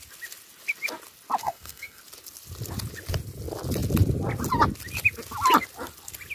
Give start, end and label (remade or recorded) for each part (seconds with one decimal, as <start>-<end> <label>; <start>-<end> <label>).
0.0-1.4 recorded; 1.4-2.0 remade; 2.0-6.3 recorded